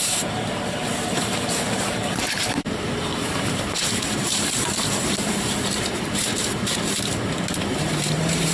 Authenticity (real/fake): fake